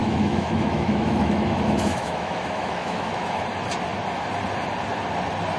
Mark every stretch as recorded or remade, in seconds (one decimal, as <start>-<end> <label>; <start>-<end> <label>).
0.0-3.4 remade; 3.4-5.6 recorded